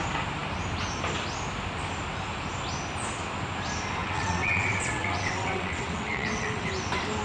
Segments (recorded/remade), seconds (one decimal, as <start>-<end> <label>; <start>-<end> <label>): 0.0-4.0 recorded; 4.0-6.7 remade; 6.7-7.2 recorded